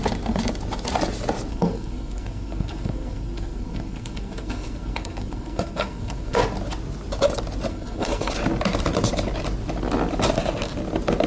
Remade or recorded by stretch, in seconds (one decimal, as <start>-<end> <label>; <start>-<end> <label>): 0.0-1.5 recorded; 1.5-6.4 remade; 6.4-7.7 recorded; 7.7-8.3 remade; 8.3-11.3 recorded